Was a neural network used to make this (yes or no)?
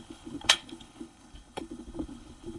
yes